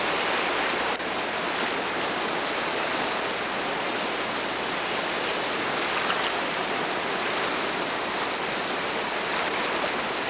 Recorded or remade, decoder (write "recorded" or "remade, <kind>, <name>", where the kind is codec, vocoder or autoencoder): recorded